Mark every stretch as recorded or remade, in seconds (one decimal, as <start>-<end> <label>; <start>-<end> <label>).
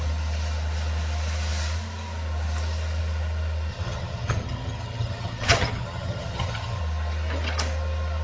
0.0-3.7 recorded; 3.7-6.8 remade; 6.8-8.2 recorded